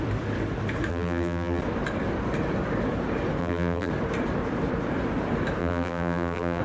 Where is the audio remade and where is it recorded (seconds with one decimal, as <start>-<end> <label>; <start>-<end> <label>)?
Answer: 0.0-0.9 recorded; 0.9-1.6 remade; 1.6-3.4 recorded; 3.4-3.9 remade; 3.9-5.6 recorded; 5.6-6.6 remade